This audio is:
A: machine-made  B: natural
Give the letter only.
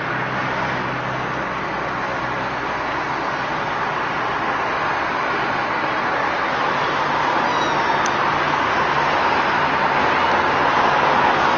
B